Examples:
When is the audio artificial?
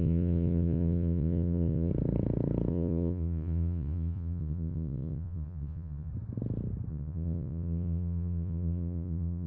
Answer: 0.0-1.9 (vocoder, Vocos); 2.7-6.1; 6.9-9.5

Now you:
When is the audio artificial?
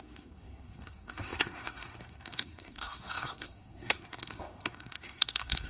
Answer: 0.0-5.7 (codec, SNAC)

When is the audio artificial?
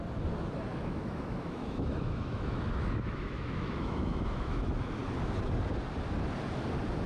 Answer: 0.7-5.0 (autoencoder, DAC-VAE)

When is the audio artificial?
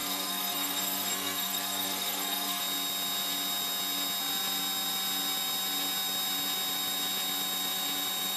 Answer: 0.0-2.6 (codec, SNAC)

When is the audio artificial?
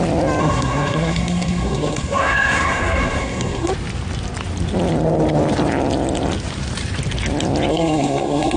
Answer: 0.4-3.7 (codec, SNAC); 7.7-8.6